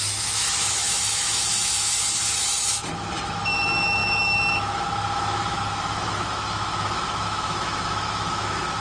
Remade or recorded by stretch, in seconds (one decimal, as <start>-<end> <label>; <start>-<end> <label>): 0.0-8.8 remade